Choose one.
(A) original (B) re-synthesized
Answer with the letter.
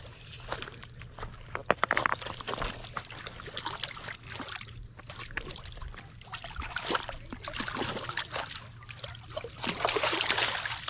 A